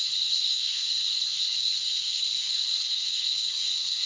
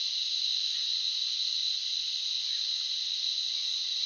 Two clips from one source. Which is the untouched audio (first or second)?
second